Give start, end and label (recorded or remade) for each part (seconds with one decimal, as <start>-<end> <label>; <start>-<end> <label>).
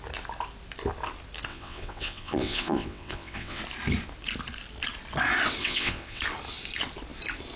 0.0-1.5 recorded; 1.5-3.6 remade; 3.6-5.6 recorded; 5.6-6.2 remade; 6.2-7.6 recorded